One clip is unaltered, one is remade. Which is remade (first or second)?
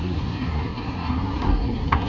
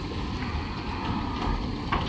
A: first